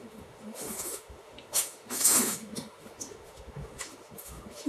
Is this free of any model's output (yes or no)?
no